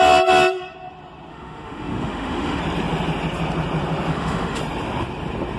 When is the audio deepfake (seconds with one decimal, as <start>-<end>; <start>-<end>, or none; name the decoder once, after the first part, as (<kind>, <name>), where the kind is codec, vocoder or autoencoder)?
1.3-2.6 (autoencoder, DAC-VAE); 4.1-4.6